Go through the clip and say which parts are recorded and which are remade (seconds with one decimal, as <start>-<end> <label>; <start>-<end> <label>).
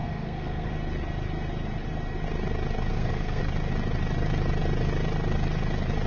0.0-0.7 remade; 0.7-2.9 recorded; 2.9-3.4 remade; 3.4-6.1 recorded